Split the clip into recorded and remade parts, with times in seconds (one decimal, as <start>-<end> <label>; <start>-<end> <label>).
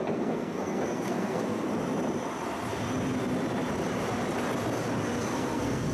0.0-1.7 remade; 1.7-5.2 recorded; 5.2-5.9 remade